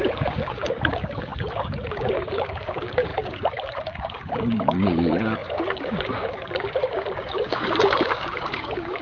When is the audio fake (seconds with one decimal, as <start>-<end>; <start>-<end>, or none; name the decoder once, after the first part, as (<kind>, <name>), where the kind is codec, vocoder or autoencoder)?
0.0-9.0 (codec, DAC)